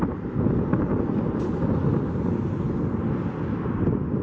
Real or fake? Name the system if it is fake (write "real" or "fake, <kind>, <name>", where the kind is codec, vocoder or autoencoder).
real